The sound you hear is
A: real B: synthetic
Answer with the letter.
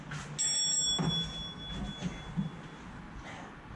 A